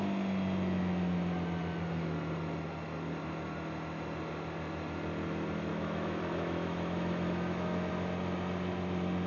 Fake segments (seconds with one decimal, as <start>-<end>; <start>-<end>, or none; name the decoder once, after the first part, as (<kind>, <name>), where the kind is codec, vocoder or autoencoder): 5.7-7.9 (autoencoder, DAC-VAE)